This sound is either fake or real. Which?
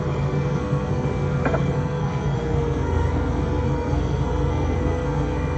fake